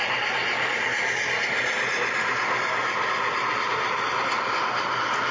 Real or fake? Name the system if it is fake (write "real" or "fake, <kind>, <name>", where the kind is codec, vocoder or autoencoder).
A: real